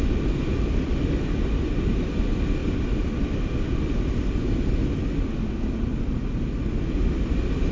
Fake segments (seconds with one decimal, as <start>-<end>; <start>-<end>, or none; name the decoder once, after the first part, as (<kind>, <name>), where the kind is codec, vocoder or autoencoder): none

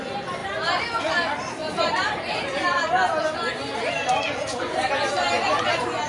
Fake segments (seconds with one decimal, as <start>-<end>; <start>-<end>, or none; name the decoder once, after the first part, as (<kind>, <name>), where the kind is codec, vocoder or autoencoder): 0.4-1.0 (vocoder, BigVGAN v2); 1.6-2.9

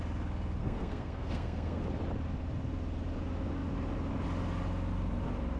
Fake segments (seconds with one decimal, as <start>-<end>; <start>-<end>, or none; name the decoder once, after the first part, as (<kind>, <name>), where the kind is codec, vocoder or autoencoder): 0.6-1.8 (codec, SNAC)